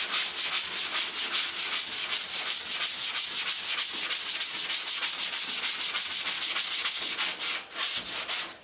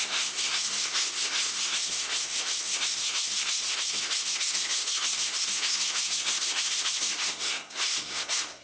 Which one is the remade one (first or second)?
second